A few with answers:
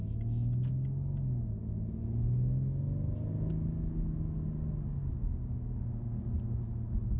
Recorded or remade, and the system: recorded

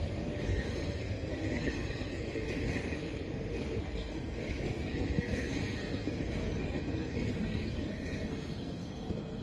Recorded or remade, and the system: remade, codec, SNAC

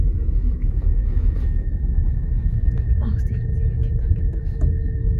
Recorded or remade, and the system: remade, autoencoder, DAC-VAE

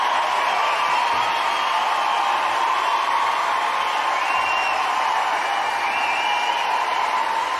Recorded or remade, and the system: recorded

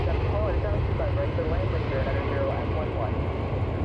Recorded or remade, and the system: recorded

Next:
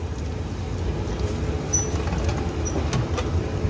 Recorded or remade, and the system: recorded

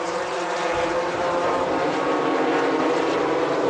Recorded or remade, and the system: remade, vocoder, BigVGAN v2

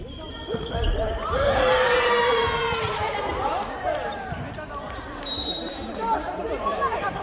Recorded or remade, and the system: remade, vocoder, BigVGAN v2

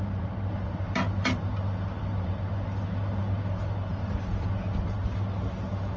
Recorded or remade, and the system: recorded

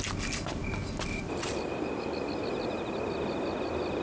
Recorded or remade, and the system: recorded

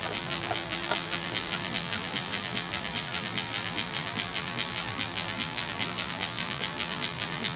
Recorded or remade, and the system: remade, vocoder, BigVGAN v2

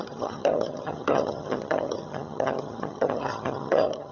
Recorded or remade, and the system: remade, vocoder, HiFi-GAN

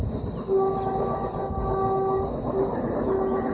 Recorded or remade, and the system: recorded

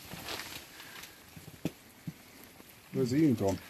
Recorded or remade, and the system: recorded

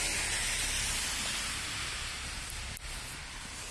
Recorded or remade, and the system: recorded